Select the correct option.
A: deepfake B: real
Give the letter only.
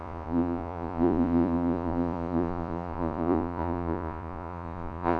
A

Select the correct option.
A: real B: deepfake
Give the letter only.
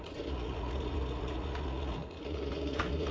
B